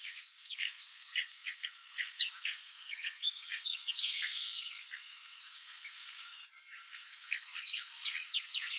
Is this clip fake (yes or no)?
yes